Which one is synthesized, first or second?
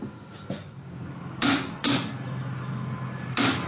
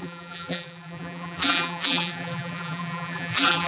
second